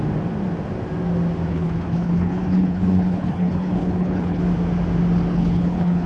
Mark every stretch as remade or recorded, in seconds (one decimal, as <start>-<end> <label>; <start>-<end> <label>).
0.0-1.5 recorded; 1.5-4.4 remade; 4.4-5.3 recorded; 5.3-6.1 remade